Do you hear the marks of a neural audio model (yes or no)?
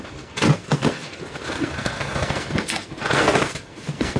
yes